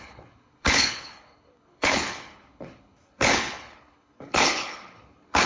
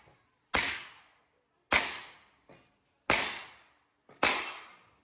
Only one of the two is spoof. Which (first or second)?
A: first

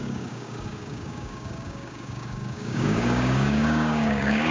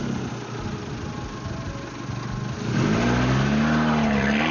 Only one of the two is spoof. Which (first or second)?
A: first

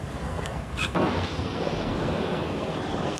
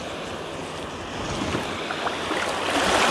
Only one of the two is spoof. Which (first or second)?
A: first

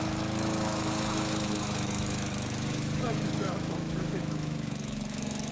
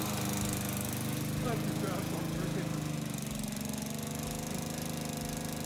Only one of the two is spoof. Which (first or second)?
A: first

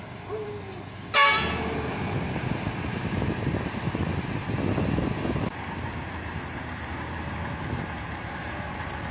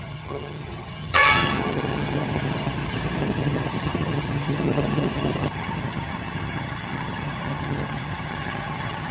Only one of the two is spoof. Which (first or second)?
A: second